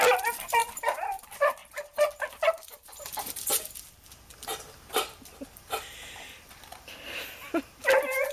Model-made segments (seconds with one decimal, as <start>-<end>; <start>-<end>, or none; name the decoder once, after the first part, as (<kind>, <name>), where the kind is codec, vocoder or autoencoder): 0.0-6.7 (vocoder, BigVGAN v2)